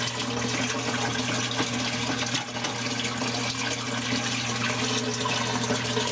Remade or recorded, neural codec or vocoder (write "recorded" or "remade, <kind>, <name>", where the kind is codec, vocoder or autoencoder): recorded